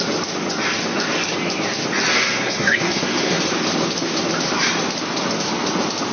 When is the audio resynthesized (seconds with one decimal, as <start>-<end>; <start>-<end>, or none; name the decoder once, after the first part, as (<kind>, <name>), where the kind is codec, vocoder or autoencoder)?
2.1-3.4 (codec, SNAC)